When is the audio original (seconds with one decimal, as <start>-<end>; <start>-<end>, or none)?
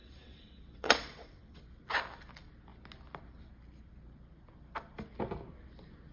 1.6-6.1